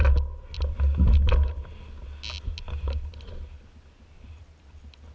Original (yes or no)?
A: yes